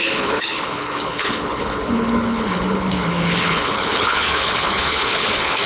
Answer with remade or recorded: remade